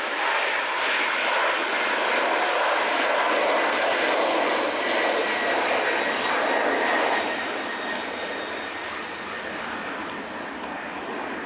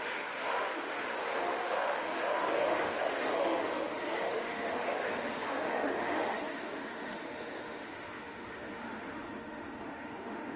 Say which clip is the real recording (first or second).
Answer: first